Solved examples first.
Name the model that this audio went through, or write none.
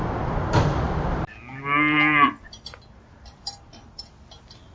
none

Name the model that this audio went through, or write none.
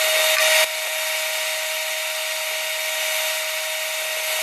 none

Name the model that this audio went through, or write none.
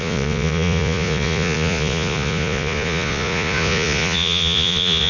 vocoder, Vocos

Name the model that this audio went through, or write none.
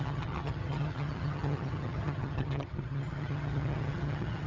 vocoder, HiFi-GAN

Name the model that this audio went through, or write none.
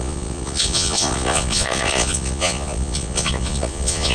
vocoder, Vocos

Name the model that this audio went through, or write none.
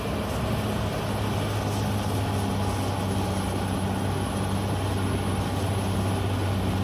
none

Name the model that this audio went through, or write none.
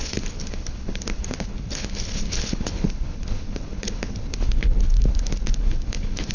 codec, HILCodec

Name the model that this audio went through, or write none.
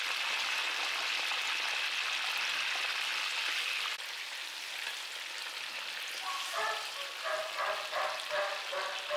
none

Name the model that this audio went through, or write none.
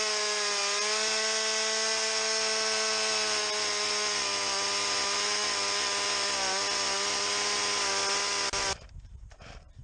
none